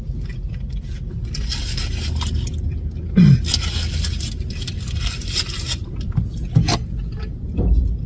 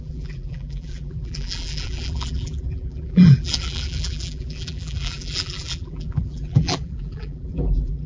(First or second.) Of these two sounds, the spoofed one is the second